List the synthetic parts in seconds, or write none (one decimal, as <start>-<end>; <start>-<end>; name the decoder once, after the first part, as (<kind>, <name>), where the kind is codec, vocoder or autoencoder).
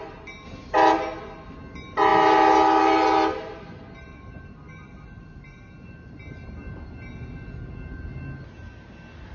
none